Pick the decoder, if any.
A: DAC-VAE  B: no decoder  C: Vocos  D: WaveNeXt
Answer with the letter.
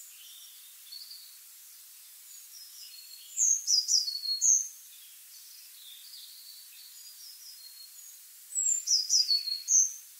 B